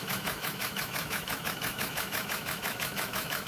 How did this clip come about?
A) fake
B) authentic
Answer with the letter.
A